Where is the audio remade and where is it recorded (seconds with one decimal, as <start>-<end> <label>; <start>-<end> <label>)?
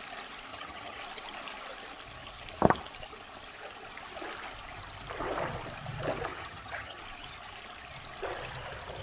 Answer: 0.0-0.5 recorded; 0.5-1.0 remade; 1.0-6.3 recorded; 6.3-7.0 remade; 7.0-9.0 recorded